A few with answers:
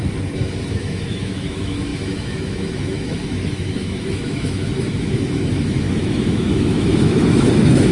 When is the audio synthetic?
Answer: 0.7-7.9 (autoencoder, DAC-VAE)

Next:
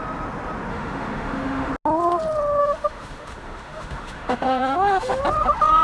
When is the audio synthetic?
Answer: 0.7-1.7 (autoencoder, DAC-VAE); 2.6-5.2

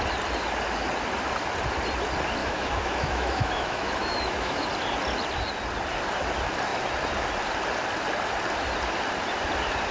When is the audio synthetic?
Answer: 2.4-4.7 (autoencoder, DAC-VAE)

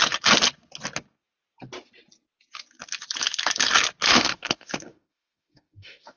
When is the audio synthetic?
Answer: 4.1-6.2 (autoencoder, DAC-VAE)